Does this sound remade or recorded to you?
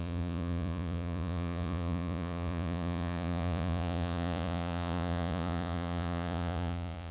remade